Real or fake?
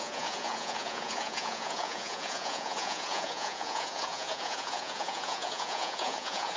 fake